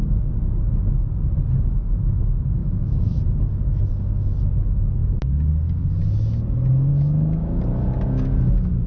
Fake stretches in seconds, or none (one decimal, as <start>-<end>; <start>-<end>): 2.6-3.2; 6.9-7.6